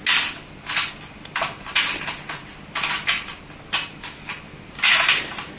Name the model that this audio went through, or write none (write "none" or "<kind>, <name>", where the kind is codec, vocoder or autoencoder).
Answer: none